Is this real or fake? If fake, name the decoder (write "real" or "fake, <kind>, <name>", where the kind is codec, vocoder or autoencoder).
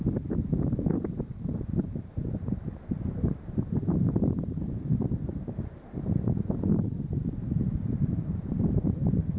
fake, vocoder, BigVGAN v2